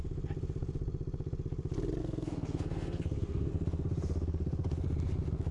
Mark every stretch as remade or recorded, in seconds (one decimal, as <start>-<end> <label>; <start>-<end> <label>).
0.0-2.0 recorded; 2.0-3.5 remade; 3.5-5.5 recorded